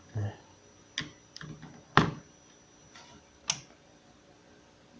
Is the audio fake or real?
real